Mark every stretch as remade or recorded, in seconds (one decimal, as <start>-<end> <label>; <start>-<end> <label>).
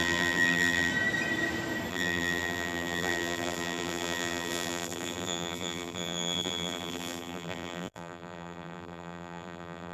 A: 0.0-0.9 remade; 0.9-1.9 recorded; 1.9-9.9 remade